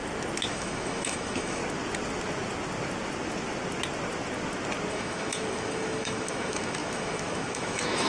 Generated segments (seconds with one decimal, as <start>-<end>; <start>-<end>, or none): 0.5-1.6; 4.9-8.1